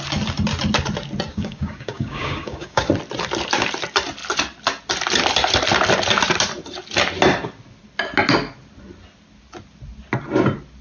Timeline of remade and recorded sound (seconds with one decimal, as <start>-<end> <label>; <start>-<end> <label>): 0.0-1.3 recorded; 1.3-2.9 remade; 2.9-10.8 recorded